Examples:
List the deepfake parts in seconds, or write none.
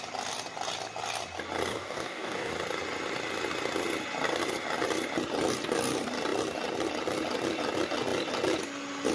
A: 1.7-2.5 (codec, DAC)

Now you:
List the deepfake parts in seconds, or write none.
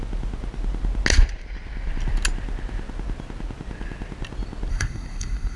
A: 4.7-5.6 (codec, SNAC)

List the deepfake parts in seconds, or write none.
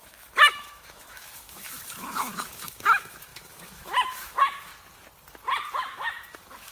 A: 0.0-4.7 (autoencoder, DAC-VAE); 5.7-6.7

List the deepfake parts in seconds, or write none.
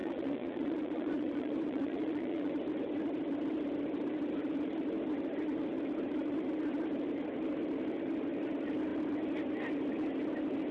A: 0.0-2.5 (vocoder, Vocos)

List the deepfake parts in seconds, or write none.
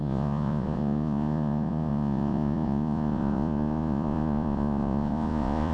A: 0.0-5.7 (vocoder, Vocos)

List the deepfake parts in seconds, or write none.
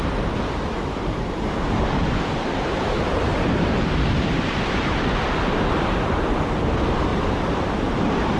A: 0.0-8.4 (vocoder, BigVGAN v2)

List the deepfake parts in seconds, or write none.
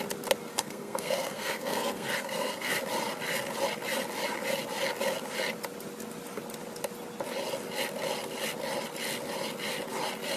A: 0.5-2.7 (codec, SNAC)